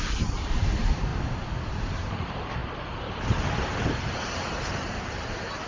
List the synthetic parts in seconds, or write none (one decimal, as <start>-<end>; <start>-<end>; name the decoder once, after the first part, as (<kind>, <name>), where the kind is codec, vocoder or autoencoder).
0.0-1.1 (vocoder, BigVGAN v2); 1.8-2.6; 3.6-5.7

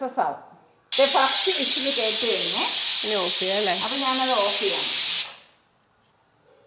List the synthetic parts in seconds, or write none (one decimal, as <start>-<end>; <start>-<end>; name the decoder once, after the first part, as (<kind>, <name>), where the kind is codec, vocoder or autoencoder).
1.2-1.9 (vocoder, HiFi-GAN)

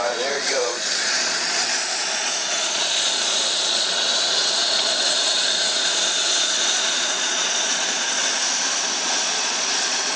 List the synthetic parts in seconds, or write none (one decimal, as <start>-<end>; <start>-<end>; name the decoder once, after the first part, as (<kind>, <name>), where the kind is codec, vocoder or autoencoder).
0.0-8.2 (vocoder, Vocos); 9.0-10.2

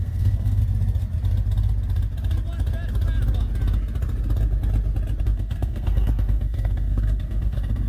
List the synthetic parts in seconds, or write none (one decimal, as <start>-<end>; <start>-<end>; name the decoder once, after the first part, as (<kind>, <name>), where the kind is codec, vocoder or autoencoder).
0.0-0.6 (codec, SNAC); 5.2-7.9

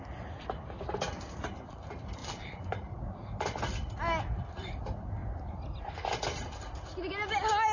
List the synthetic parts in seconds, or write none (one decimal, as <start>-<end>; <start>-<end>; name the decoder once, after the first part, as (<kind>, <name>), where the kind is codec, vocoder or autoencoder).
2.2-3.0 (vocoder, BigVGAN v2)

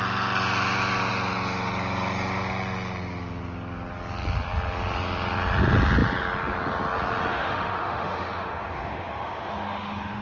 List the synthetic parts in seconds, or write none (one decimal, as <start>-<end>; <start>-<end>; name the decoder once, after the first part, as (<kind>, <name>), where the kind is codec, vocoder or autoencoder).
7.3-10.2 (autoencoder, DAC-VAE)

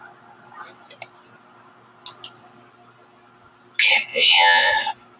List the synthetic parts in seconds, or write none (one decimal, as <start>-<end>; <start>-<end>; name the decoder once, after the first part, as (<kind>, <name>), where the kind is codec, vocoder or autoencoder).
4.1-4.7 (vocoder, Vocos)